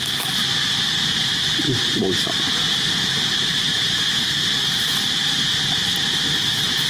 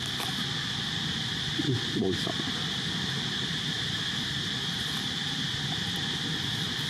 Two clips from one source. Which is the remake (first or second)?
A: second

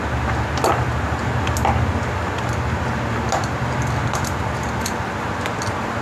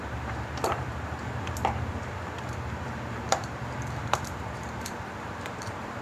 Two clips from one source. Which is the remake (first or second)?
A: second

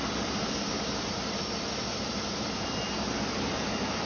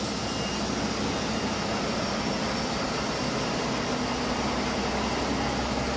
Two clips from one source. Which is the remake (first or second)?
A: first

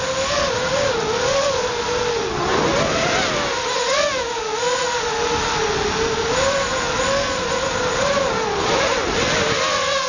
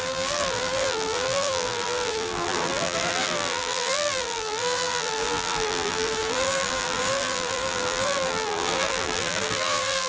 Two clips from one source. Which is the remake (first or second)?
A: second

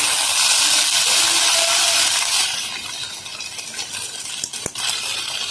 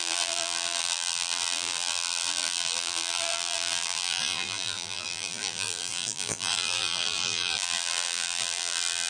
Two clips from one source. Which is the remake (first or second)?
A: second